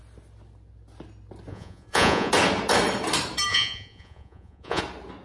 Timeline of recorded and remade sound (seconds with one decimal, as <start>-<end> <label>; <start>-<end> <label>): 0.0-1.5 recorded; 1.5-2.3 remade; 2.3-3.5 recorded; 3.5-4.8 remade; 4.8-5.2 recorded